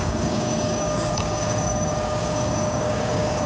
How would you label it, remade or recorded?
remade